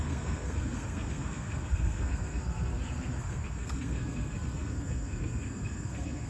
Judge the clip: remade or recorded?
remade